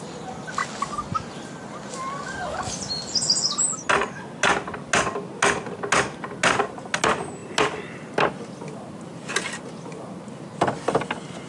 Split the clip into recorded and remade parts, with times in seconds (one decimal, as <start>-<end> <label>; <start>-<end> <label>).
0.0-11.5 recorded